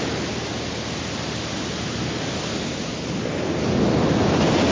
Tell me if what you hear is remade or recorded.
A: recorded